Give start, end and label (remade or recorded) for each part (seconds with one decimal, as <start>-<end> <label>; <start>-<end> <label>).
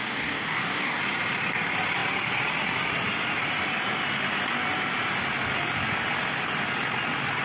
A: 0.0-1.0 remade; 1.0-7.4 recorded